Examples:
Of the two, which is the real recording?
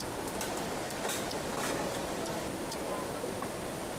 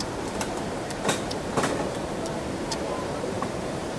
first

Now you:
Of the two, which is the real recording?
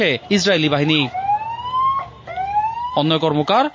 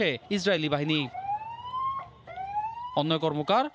first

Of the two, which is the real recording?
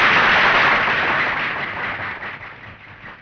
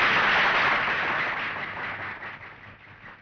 second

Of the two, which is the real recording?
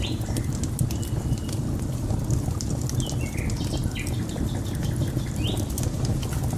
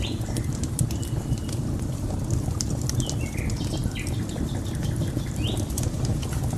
first